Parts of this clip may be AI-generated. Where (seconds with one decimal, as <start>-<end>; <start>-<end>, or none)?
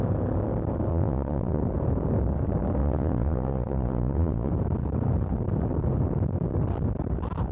0.9-1.6; 2.8-4.5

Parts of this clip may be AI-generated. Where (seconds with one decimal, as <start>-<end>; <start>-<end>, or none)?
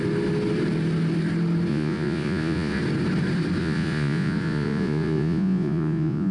1.7-2.8; 3.6-6.3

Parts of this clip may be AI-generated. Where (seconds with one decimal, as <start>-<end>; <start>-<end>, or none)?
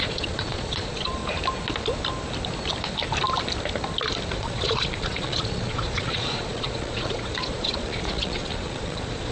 0.0-1.2; 4.3-9.3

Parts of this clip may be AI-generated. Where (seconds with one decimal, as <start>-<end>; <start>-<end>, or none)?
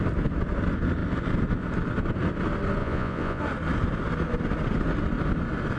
2.8-3.4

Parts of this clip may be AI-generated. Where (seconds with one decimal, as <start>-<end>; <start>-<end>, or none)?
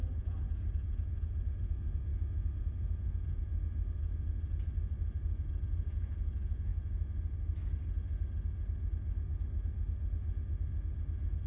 0.0-2.1; 2.6-3.4; 5.5-6.7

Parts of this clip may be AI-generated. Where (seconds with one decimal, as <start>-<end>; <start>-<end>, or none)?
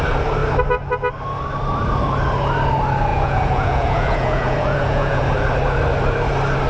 3.1-5.2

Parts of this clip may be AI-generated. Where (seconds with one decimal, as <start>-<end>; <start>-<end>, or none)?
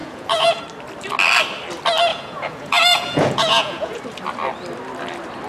0.0-0.6; 2.1-4.0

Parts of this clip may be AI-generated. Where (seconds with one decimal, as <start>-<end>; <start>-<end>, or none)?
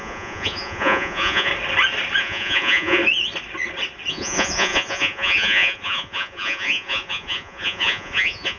0.0-1.5; 2.2-3.0; 4.1-8.6